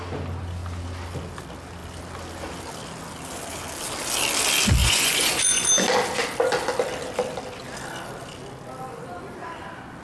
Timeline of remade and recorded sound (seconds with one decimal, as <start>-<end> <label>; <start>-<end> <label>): 0.0-4.8 recorded; 4.8-5.7 remade; 5.7-10.0 recorded